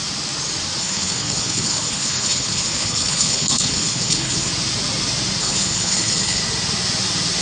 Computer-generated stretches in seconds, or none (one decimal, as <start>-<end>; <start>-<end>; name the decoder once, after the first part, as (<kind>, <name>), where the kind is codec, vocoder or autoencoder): 0.8-4.5 (codec, HILCodec); 5.4-6.4